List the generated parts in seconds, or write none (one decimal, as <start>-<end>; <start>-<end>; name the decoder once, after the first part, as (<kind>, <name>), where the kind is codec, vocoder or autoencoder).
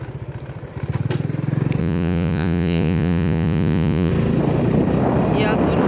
1.8-4.1 (vocoder, Vocos)